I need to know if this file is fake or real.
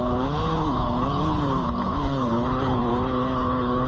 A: fake